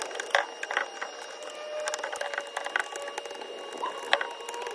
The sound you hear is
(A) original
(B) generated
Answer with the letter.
A